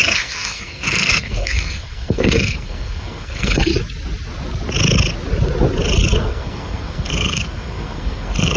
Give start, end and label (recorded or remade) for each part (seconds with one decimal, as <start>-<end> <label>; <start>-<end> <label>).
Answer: 0.0-3.7 remade; 3.7-6.2 recorded; 6.2-8.6 remade